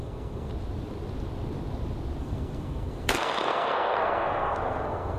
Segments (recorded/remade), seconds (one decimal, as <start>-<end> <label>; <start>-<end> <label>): 0.0-0.5 remade; 0.5-2.2 recorded; 2.2-5.2 remade